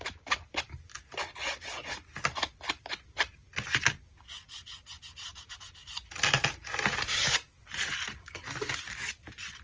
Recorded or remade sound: recorded